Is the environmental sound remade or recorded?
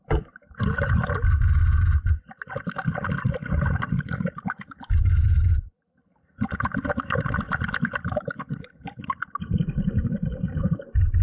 recorded